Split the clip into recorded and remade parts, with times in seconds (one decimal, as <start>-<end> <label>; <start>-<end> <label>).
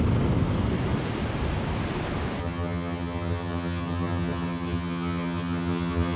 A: 0.0-2.4 recorded; 2.4-6.2 remade